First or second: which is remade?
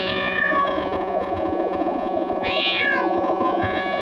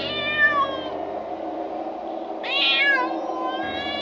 first